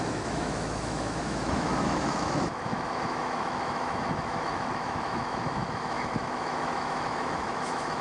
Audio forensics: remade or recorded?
remade